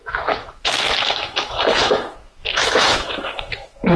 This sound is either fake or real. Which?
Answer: fake